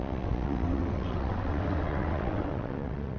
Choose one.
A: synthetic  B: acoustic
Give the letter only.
A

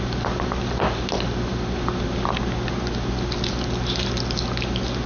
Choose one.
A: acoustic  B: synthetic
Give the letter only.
A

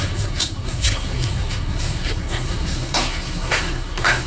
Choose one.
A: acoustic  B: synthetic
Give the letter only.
B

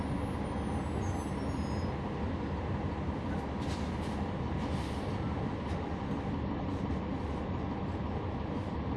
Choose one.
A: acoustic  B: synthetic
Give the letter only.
A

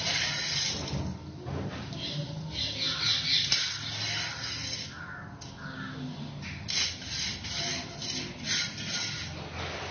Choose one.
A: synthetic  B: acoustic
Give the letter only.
B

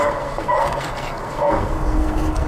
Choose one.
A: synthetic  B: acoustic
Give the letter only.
A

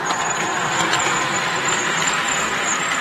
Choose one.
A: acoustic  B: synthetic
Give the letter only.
A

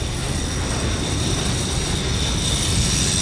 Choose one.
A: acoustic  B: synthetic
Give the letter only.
A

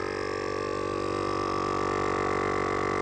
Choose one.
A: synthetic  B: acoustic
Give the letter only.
B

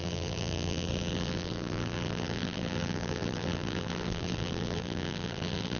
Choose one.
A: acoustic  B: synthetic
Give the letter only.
B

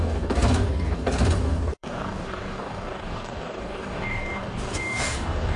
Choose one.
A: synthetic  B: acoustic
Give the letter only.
A